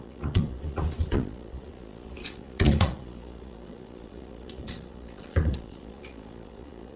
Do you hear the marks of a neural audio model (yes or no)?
yes